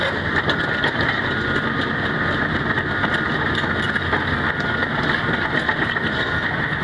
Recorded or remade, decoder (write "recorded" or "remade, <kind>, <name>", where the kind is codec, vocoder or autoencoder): recorded